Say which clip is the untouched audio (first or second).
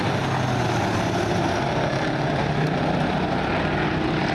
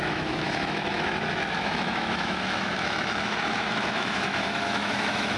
first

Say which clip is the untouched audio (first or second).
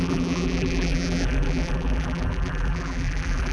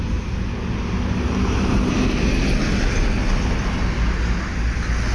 second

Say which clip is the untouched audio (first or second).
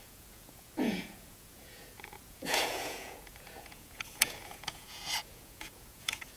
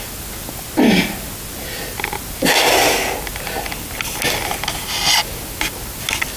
second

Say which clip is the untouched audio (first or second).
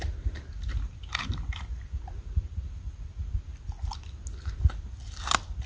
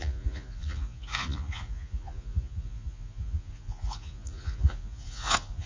first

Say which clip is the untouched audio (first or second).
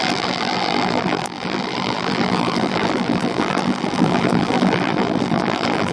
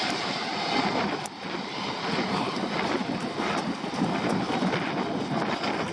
second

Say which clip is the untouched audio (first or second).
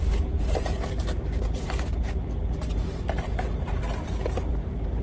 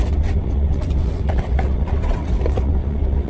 first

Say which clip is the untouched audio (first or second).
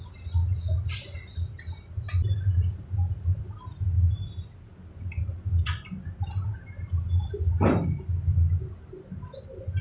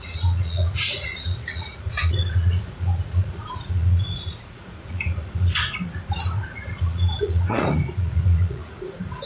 first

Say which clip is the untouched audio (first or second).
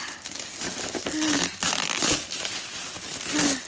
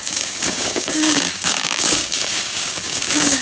first